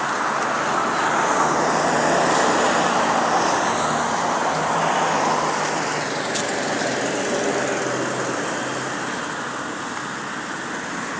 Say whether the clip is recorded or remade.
recorded